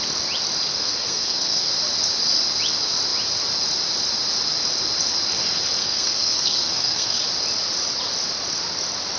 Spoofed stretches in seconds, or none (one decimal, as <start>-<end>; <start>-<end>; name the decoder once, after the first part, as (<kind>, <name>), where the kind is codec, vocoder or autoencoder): 0.7-1.7 (codec, SNAC); 5.8-7.2